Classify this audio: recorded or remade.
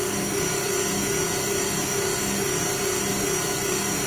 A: recorded